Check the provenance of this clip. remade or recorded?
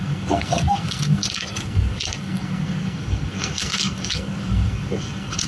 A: remade